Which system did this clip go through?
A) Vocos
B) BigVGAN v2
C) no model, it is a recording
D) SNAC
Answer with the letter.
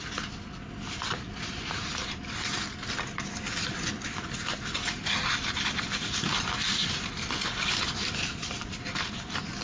C